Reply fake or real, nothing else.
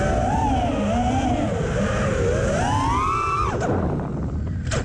real